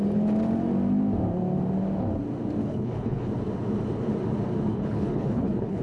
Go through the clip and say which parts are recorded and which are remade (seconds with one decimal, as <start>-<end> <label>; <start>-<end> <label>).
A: 0.0-2.6 recorded; 2.6-3.3 remade; 3.3-4.7 recorded; 4.7-5.8 remade